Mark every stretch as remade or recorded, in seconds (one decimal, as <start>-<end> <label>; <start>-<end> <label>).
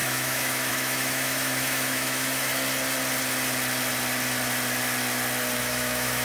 0.0-2.5 remade; 2.5-5.6 recorded; 5.6-6.2 remade